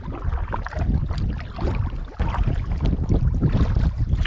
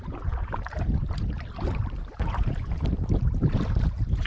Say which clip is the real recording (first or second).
first